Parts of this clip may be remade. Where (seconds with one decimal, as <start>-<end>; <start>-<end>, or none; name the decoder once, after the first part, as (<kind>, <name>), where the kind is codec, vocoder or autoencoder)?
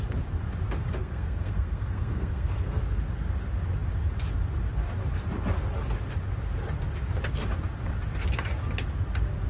1.0-2.8 (codec, SNAC)